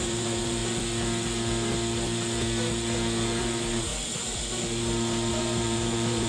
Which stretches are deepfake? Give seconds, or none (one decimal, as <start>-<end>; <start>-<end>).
0.0-0.6; 3.4-3.9; 5.3-6.3